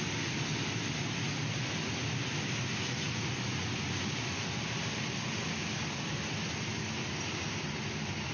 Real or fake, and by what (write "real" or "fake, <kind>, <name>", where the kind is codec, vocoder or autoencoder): real